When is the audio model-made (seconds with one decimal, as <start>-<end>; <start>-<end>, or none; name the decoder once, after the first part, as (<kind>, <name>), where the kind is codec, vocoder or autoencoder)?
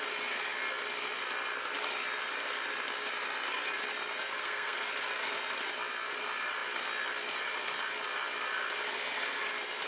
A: 4.4-4.9 (codec, SNAC)